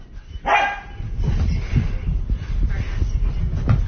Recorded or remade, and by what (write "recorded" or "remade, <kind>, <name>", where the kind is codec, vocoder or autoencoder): recorded